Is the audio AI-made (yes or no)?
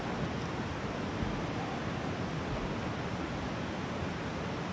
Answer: no